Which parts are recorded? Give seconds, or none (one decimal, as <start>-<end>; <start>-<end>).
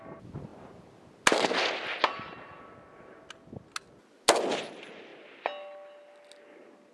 0.0-6.9